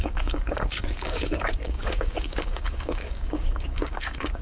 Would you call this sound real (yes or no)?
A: no